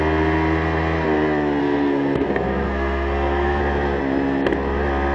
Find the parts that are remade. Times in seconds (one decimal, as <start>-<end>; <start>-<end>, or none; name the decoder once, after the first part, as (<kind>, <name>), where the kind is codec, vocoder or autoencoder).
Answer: 1.6-3.6 (codec, SNAC)